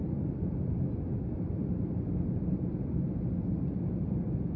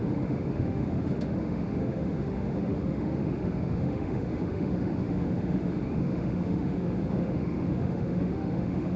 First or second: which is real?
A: first